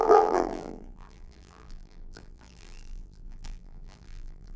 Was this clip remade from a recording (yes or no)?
yes